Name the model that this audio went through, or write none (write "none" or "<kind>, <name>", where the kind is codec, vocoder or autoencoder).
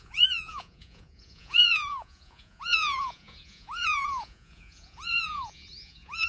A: vocoder, Vocos